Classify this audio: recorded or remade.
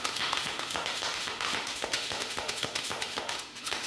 remade